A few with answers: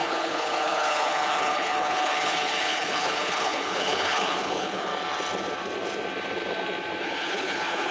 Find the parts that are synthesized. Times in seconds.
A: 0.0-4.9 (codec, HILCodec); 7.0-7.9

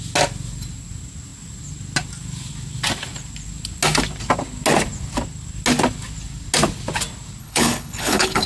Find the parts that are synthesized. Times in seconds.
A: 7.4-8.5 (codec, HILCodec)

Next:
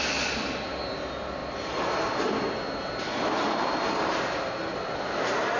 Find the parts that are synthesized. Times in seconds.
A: none

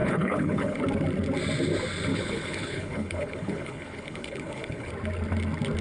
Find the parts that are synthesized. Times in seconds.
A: 0.0-0.8 (codec, HILCodec); 2.1-4.9

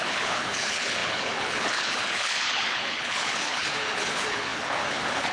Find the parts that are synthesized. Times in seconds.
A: 0.0-5.3 (codec, HILCodec)

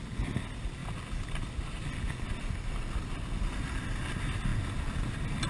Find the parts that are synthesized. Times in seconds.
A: none

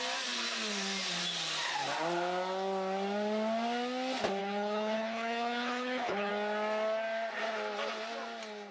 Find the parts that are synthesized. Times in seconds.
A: 4.4-6.3 (codec, HILCodec)

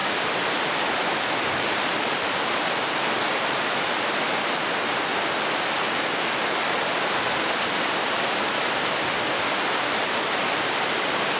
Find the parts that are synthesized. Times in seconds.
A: none